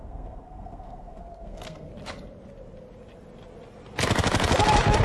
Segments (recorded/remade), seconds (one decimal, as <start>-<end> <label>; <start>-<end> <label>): 0.0-1.9 remade; 1.9-5.0 recorded